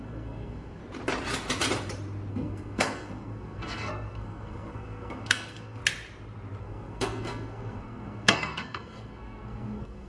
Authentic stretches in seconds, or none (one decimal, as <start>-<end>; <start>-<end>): 0.8-2.3; 5.8-6.6